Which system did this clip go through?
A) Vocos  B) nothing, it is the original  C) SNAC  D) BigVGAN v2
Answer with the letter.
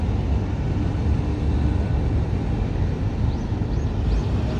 B